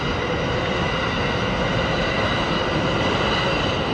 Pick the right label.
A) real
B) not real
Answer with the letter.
A